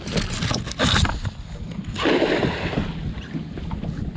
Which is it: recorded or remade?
recorded